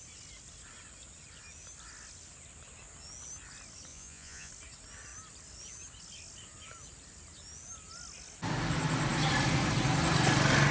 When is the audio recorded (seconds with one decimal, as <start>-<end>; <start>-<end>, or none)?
0.0-3.9; 4.5-10.7